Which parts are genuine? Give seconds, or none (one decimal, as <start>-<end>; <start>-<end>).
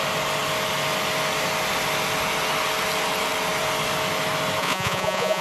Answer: 0.0-4.6